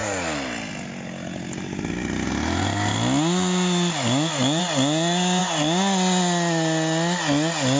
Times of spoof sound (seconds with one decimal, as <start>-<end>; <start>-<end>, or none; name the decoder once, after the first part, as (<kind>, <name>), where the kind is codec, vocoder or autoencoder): none